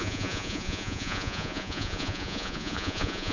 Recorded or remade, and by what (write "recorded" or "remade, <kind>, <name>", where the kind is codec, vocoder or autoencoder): remade, vocoder, Vocos